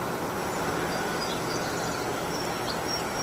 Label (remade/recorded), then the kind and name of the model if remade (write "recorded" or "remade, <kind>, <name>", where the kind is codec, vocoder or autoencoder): recorded